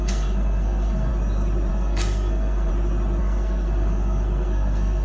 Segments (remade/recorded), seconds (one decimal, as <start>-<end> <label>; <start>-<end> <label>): 0.0-1.1 remade; 1.1-1.7 recorded; 1.7-2.7 remade; 2.7-3.2 recorded; 3.2-5.0 remade